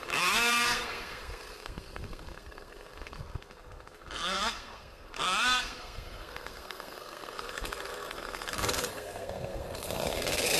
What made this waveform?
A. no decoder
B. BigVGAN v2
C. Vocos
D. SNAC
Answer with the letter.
D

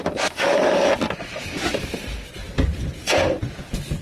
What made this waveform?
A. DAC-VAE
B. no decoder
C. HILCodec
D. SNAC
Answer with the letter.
B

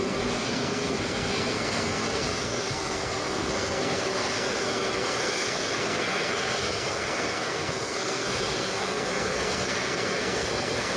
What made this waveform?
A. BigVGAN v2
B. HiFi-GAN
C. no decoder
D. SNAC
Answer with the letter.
D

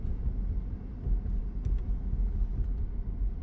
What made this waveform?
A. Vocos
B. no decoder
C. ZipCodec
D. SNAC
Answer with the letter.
B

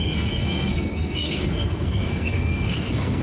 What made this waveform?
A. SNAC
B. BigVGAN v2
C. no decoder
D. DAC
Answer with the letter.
A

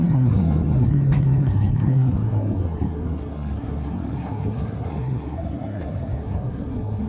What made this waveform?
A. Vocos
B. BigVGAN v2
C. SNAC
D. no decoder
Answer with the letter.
C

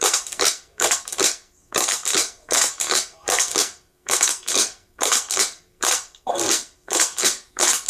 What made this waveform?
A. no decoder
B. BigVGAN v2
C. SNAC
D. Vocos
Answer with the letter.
C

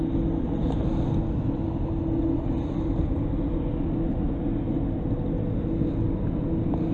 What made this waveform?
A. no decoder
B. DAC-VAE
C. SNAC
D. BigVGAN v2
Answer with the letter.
A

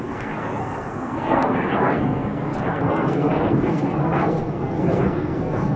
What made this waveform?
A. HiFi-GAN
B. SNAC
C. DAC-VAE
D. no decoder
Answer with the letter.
B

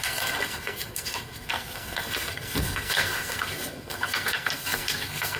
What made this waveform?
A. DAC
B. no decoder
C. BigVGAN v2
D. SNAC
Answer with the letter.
D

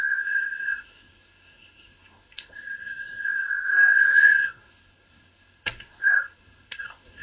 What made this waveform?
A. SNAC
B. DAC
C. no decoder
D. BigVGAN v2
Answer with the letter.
A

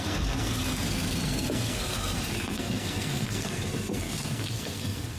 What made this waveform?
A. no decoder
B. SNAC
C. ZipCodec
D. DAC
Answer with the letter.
B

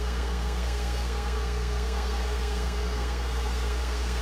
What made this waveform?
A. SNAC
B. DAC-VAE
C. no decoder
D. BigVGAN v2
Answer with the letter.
A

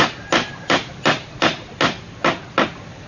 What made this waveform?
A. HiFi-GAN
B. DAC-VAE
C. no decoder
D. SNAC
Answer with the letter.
C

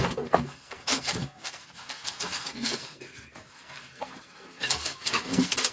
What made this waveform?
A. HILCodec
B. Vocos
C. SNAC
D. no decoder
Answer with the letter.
C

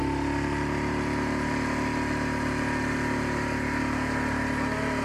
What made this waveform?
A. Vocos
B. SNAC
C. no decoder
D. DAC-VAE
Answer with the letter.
C